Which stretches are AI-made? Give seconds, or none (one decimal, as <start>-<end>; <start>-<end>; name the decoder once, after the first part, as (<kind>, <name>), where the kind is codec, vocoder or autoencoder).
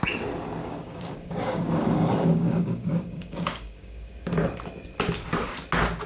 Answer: 0.6-4.3 (codec, DAC)